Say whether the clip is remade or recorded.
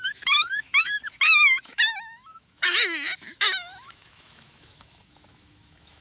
remade